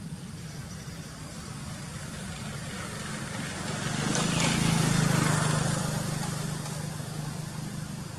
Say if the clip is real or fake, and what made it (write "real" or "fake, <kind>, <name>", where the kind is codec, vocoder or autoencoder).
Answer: real